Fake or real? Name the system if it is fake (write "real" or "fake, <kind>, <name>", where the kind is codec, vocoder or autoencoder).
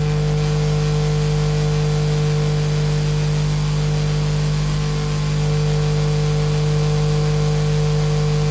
real